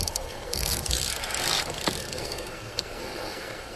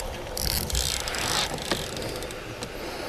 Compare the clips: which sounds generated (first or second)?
first